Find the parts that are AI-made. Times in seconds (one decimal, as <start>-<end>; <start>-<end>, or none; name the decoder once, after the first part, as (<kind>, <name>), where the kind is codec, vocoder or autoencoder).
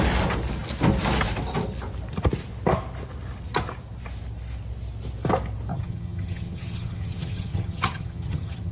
5.7-8.7 (vocoder, HiFi-GAN)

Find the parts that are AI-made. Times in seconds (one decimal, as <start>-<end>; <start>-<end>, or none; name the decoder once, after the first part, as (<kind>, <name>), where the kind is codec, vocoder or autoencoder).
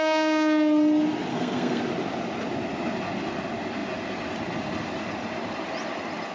1.3-1.8 (codec, SNAC)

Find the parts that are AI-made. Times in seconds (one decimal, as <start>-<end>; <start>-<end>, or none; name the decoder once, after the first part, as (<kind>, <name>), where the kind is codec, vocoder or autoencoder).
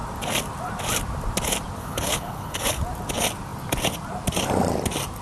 1.8-2.8 (codec, HILCodec)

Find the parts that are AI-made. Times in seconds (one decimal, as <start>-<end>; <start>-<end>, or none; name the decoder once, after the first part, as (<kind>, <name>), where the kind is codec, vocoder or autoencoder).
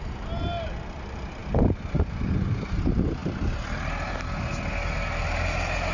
1.4-2.5 (vocoder, BigVGAN v2)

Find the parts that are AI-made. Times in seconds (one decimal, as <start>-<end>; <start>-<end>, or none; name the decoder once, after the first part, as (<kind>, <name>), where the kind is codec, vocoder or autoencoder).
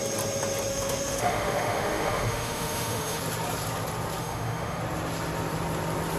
0.7-3.2 (autoencoder, DAC-VAE); 4.2-4.8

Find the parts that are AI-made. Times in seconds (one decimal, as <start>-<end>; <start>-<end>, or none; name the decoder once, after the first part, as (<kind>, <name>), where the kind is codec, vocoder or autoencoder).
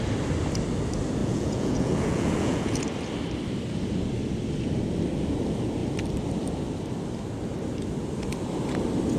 1.2-2.8 (vocoder, Vocos)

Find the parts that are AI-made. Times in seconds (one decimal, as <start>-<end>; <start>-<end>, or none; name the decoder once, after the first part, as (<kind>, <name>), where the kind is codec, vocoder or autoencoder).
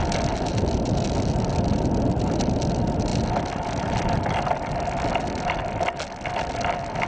none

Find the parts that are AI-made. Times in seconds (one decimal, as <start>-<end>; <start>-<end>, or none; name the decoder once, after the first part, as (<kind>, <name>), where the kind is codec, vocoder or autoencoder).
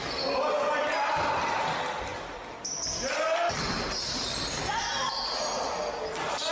none